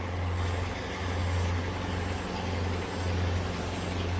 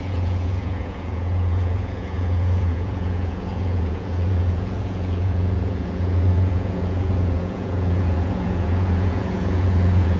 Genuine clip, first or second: first